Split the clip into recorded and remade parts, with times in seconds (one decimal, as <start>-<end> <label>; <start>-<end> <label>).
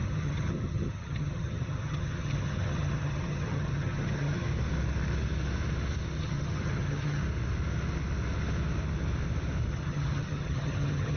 0.0-4.5 remade; 4.5-6.2 recorded; 6.2-7.2 remade; 7.2-9.7 recorded; 9.7-11.2 remade